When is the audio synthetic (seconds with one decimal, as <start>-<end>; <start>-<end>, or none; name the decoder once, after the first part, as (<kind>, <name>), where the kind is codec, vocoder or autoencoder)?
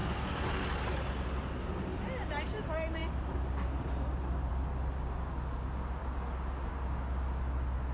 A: none